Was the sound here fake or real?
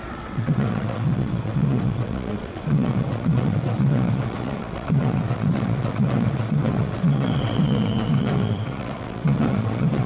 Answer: fake